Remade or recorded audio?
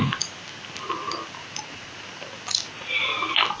recorded